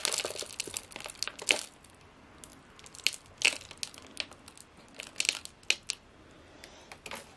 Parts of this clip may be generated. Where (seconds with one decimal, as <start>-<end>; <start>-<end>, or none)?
none